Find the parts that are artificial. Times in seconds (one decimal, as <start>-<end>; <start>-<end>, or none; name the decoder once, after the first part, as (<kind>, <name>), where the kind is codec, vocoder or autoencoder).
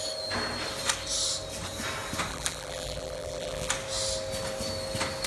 2.3-3.7 (vocoder, BigVGAN v2)